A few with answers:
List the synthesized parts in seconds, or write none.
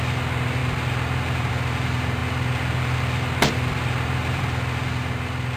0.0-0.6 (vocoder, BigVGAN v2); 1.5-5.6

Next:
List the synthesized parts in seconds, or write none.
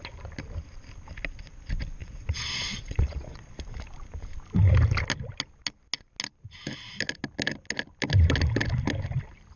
2.0-3.5 (vocoder, Vocos)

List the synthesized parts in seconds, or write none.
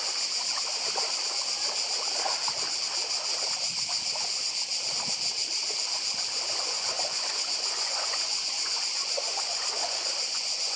6.6-10.8 (vocoder, Vocos)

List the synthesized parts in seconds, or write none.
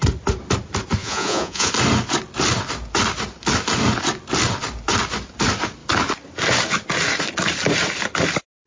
1.0-1.7 (vocoder, Vocos)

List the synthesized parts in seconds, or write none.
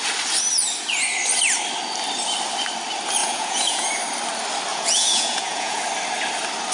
3.2-3.9 (vocoder, Vocos); 4.7-5.8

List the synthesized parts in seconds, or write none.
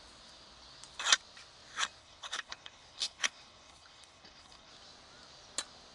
2.0-4.7 (codec, HILCodec)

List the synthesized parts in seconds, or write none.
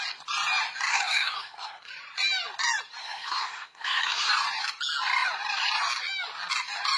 0.9-1.9 (codec, SNAC); 3.0-4.3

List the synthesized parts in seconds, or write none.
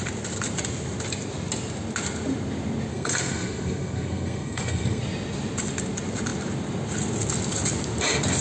2.9-5.0 (codec, SNAC)